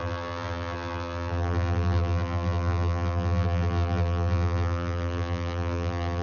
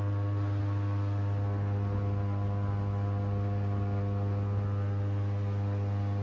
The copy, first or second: first